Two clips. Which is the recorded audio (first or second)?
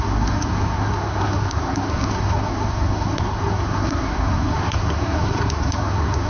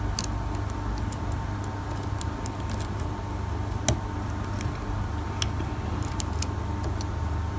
second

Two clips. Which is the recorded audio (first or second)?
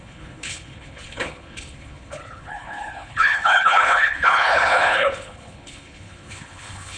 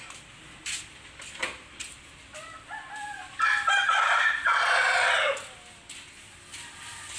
second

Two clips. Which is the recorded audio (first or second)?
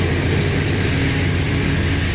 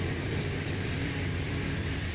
first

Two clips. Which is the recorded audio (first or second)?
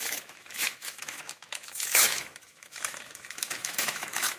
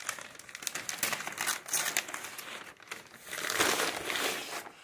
second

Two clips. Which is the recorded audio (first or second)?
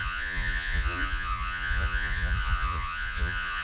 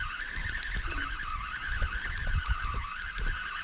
second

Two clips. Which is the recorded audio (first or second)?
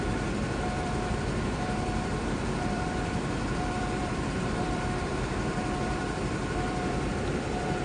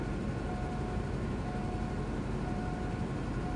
second